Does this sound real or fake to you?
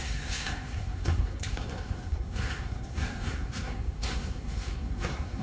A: fake